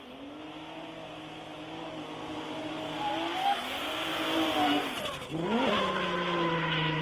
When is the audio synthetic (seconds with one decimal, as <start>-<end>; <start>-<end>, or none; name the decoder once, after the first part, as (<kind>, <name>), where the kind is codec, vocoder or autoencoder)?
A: none